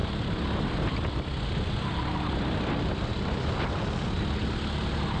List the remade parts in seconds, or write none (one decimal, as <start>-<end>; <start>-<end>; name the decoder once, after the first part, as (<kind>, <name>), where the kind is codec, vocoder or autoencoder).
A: none